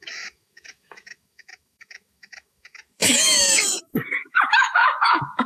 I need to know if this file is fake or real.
fake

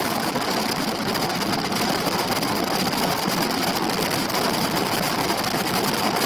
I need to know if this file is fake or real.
real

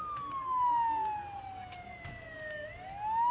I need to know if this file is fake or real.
real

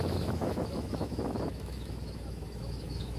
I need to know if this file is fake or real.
fake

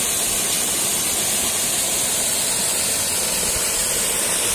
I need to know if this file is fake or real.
real